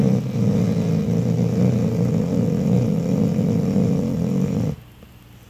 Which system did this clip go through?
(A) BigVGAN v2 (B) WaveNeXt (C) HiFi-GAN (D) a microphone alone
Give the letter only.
D